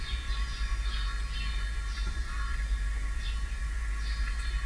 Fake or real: fake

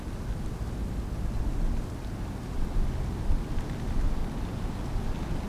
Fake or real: real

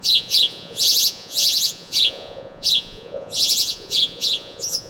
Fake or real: fake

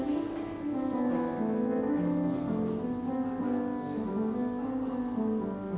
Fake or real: real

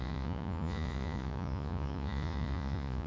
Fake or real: fake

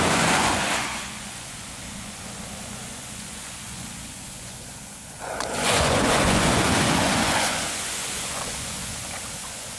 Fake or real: fake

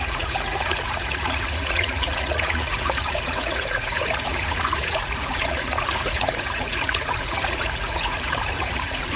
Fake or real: fake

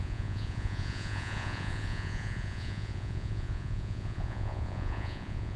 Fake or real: fake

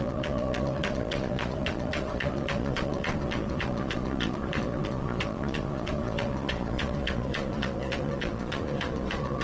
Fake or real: fake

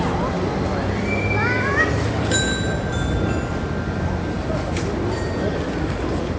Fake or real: real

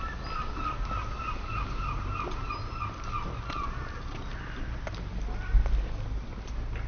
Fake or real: real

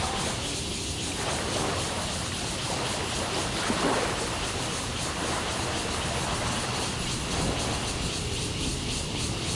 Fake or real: real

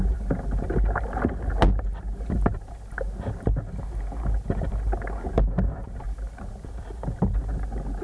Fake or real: real